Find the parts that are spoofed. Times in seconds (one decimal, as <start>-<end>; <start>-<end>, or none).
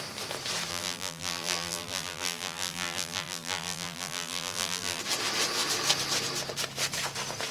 0.7-5.0